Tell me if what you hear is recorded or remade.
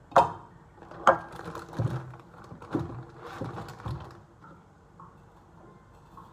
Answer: recorded